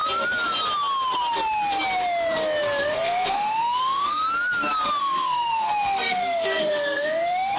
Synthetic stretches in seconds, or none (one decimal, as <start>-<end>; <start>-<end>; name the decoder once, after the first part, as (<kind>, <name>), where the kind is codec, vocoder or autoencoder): 2.8-4.2 (codec, SNAC); 5.0-7.6